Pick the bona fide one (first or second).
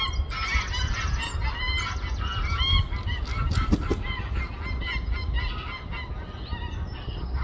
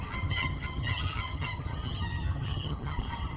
first